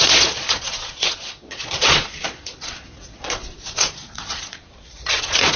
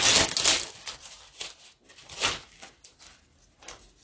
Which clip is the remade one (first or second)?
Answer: first